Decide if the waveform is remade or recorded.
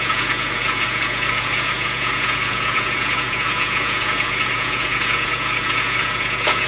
remade